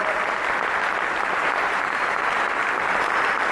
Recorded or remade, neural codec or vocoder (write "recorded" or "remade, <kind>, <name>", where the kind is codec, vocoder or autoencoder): recorded